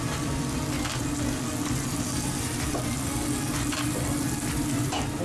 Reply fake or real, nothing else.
real